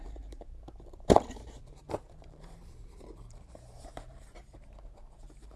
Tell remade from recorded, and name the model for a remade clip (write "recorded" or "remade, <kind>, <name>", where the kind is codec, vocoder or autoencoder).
remade, vocoder, BigVGAN v2